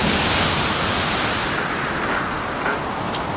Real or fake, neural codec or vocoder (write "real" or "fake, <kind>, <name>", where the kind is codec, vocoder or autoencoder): real